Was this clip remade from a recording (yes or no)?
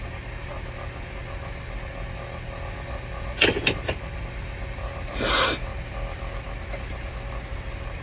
no